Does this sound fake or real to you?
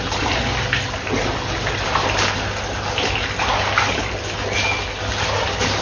real